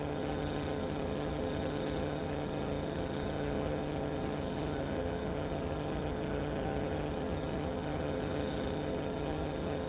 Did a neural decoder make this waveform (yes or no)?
yes